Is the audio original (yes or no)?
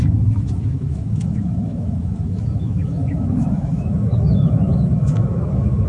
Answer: no